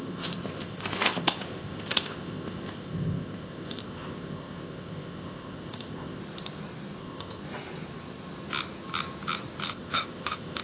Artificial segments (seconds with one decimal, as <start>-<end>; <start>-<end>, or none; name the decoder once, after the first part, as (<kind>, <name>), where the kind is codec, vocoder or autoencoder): 0.0-6.2 (codec, ZipCodec); 7.0-7.4; 9.7-10.6